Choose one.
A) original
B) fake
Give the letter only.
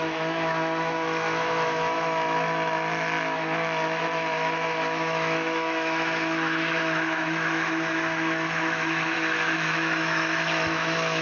B